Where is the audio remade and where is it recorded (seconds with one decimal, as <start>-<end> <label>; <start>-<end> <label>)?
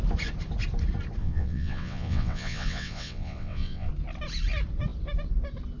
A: 0.0-1.2 recorded; 1.2-3.9 remade; 3.9-5.8 recorded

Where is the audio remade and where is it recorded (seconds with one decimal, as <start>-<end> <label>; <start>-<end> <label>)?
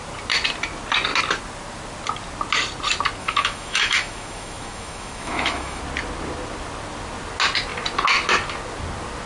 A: 0.0-3.2 recorded; 3.2-5.8 remade; 5.8-9.3 recorded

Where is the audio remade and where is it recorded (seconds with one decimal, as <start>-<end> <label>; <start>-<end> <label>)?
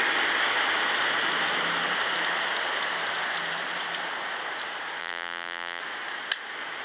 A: 0.0-5.0 recorded; 5.0-5.8 remade; 5.8-6.8 recorded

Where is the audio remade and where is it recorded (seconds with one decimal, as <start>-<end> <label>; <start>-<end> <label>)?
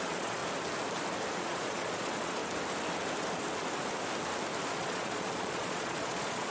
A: 0.0-0.4 remade; 0.4-1.4 recorded; 1.4-2.4 remade; 2.4-4.7 recorded; 4.7-6.5 remade